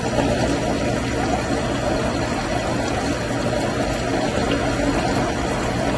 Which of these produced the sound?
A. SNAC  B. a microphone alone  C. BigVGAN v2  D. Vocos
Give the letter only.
B